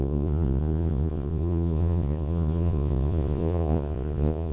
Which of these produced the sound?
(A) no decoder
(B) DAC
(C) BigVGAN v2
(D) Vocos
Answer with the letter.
D